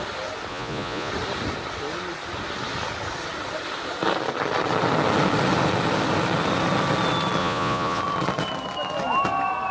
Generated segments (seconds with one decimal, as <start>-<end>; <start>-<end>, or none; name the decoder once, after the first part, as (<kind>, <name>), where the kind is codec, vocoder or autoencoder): 0.5-1.1 (vocoder, Vocos); 7.4-8.0